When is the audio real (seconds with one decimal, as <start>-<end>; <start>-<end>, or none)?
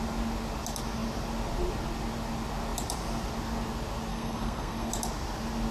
0.0-4.1; 4.9-5.7